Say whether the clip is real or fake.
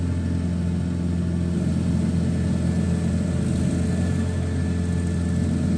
real